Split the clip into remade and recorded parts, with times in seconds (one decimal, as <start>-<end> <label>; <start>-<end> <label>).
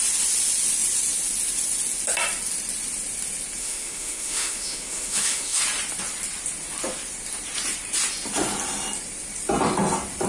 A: 0.0-3.6 recorded; 3.6-5.6 remade; 5.6-10.3 recorded